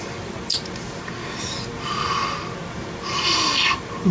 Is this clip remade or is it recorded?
recorded